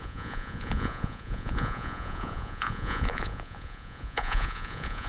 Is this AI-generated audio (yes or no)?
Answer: yes